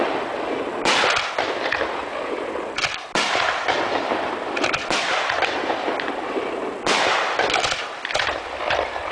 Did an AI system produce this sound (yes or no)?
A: no